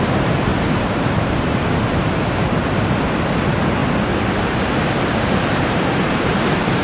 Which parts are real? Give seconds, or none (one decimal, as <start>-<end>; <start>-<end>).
3.8-5.0